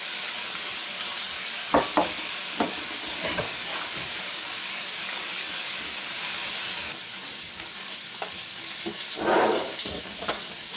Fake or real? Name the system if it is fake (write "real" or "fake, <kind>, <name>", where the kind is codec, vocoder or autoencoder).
fake, codec, DAC